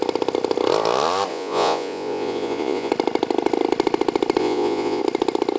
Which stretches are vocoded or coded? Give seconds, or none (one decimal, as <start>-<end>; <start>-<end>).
1.3-2.9; 4.4-5.0

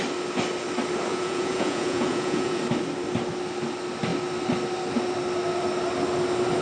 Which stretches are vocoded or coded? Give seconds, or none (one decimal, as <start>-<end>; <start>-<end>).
1.1-2.6

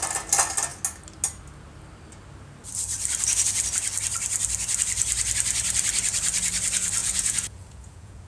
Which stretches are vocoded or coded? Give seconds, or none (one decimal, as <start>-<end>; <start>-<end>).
7.0-8.3